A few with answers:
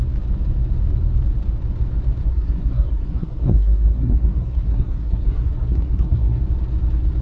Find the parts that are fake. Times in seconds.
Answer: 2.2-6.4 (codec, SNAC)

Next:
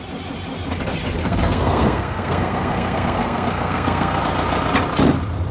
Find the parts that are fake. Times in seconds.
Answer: 1.2-4.2 (codec, SNAC)

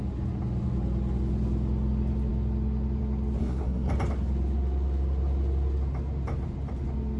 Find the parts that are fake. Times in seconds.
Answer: 3.4-3.9 (codec, SNAC)

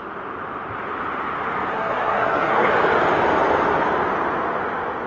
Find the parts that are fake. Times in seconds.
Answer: 1.7-2.7 (codec, SNAC)